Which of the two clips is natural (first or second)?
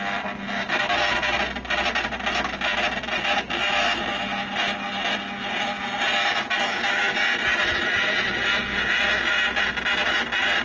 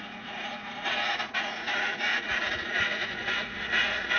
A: first